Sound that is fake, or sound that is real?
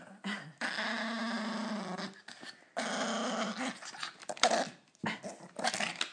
real